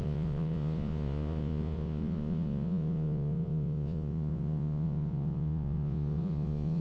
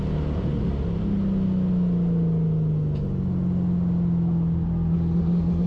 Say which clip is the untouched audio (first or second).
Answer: second